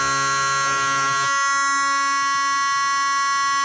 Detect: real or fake real